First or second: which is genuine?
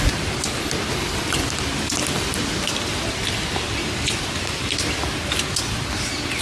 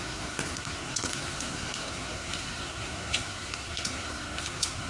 first